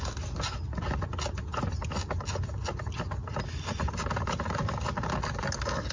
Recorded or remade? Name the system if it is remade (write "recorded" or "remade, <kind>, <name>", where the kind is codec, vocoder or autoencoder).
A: recorded